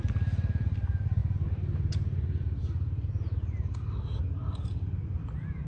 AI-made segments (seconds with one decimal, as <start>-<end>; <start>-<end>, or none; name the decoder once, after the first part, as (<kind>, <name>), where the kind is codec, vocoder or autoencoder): 0.0-1.2 (vocoder, BigVGAN v2); 4.2-5.7